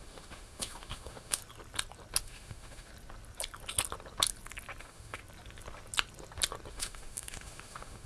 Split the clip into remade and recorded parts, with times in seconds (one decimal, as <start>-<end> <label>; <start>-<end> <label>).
0.0-1.4 remade; 1.4-2.2 recorded; 2.2-2.9 remade; 2.9-4.8 recorded; 4.8-5.2 remade; 5.2-6.7 recorded; 6.7-8.1 remade